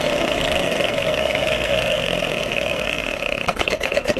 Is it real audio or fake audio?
fake